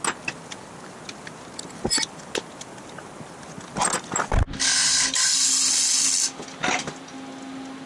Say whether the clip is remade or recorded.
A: recorded